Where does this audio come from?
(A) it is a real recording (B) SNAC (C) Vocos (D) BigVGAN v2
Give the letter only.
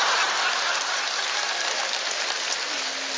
A